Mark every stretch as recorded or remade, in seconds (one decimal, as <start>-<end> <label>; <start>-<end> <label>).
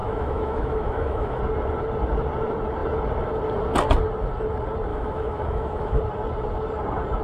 0.0-1.4 remade; 1.4-4.9 recorded; 4.9-6.0 remade; 6.0-7.2 recorded